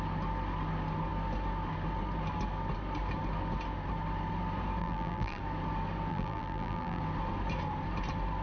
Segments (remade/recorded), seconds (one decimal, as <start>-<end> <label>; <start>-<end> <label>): 0.0-4.8 recorded; 4.8-5.4 remade; 5.4-6.1 recorded; 6.1-7.0 remade; 7.0-8.4 recorded